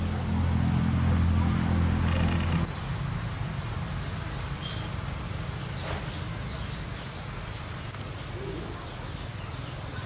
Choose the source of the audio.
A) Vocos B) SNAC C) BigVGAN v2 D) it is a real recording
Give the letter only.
D